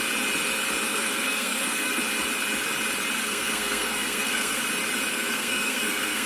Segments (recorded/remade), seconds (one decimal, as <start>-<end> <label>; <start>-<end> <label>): 0.0-0.9 recorded; 0.9-2.0 remade; 2.0-3.2 recorded; 3.2-4.6 remade; 4.6-5.1 recorded; 5.1-6.3 remade